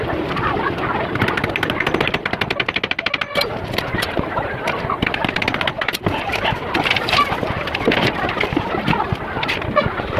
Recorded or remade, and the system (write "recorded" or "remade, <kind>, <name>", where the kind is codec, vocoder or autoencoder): recorded